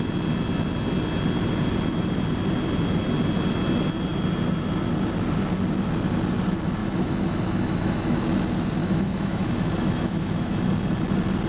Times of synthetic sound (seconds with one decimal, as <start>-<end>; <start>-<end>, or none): 6.8-8.2; 8.8-10.6